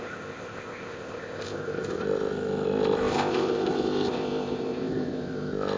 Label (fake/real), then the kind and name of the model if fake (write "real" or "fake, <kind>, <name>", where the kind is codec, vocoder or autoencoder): fake, codec, ZipCodec